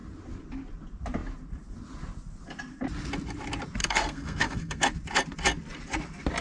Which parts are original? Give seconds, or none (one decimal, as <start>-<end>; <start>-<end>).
0.0-3.8; 4.9-6.4